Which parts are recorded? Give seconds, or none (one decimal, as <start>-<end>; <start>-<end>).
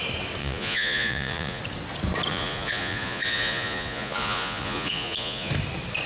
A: 0.0-0.4; 1.6-2.3; 5.5-6.1